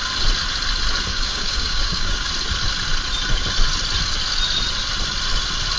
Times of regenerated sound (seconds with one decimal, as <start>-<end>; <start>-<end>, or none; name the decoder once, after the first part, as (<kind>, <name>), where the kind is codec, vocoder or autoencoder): 1.1-2.3 (codec, DAC)